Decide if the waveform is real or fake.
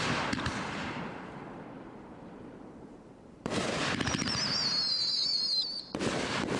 fake